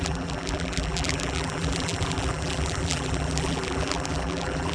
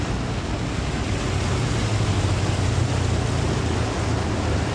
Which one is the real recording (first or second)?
second